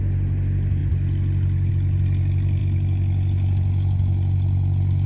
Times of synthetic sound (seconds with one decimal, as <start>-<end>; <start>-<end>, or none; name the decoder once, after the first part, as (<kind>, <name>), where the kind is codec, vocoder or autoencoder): none

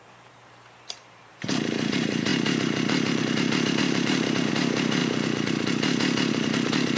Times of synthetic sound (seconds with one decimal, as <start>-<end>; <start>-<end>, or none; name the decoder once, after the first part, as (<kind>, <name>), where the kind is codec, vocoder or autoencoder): 0.0-5.0 (vocoder, BigVGAN v2); 6.3-7.0

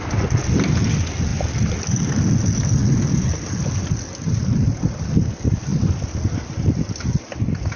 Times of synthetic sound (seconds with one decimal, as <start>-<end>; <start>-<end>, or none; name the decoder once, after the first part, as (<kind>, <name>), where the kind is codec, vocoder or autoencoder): none

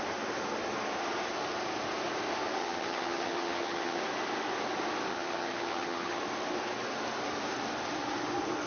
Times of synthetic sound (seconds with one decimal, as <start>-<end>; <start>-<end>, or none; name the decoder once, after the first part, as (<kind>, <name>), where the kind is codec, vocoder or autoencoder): 2.6-4.0 (vocoder, HiFi-GAN); 5.1-6.2

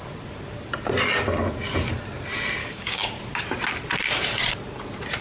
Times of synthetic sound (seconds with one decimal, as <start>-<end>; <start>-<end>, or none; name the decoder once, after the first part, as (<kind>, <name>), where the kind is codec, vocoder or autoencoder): 2.6-3.1 (codec, DAC)